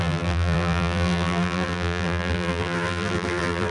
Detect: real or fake fake